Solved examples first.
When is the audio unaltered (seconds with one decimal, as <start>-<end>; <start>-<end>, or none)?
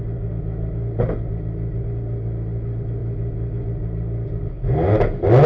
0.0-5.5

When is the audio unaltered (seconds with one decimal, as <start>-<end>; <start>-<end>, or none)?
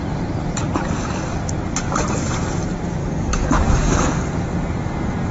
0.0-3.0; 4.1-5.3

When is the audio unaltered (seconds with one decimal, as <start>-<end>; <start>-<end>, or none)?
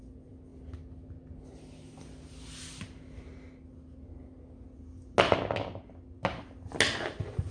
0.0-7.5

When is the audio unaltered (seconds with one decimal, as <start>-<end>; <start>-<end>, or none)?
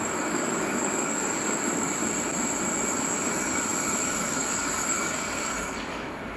2.0-2.9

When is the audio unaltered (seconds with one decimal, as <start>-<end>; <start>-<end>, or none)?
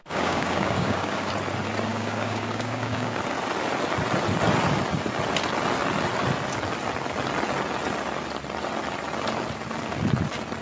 1.3-1.9; 3.2-10.6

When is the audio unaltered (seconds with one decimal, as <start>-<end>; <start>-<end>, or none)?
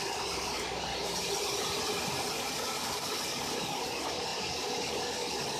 0.9-2.3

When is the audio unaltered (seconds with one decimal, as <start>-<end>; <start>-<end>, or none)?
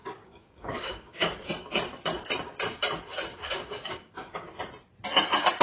1.5-3.3; 4.5-5.6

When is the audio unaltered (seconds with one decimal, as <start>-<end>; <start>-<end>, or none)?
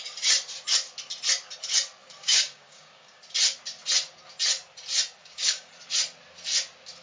0.0-2.2; 3.2-5.2; 5.7-7.0